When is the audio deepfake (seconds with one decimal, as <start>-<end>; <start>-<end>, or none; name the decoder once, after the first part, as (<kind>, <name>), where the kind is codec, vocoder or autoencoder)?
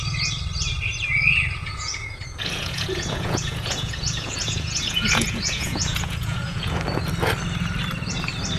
1.6-6.8 (vocoder, Vocos)